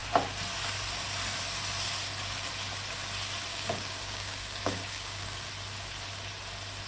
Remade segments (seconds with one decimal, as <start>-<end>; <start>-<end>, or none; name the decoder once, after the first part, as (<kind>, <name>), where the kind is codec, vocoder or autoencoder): 3.5-5.5 (codec, DAC)